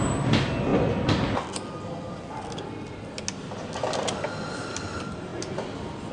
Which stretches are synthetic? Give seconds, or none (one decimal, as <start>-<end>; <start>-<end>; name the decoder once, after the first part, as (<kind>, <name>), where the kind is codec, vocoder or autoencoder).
none